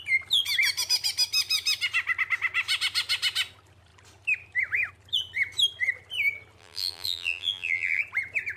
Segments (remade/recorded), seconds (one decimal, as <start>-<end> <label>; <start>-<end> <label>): 0.0-6.6 recorded; 6.6-8.0 remade; 8.0-8.6 recorded